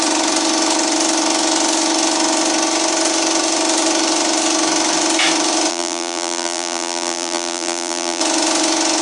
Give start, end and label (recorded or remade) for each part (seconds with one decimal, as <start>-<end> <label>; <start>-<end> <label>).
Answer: 0.0-5.7 recorded; 5.7-8.2 remade; 8.2-9.0 recorded